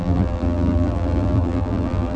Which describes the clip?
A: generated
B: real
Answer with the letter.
A